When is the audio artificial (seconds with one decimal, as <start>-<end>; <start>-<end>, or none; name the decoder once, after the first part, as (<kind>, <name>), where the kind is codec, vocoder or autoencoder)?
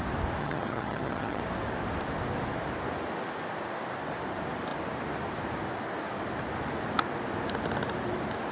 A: 0.4-1.4 (vocoder, HiFi-GAN)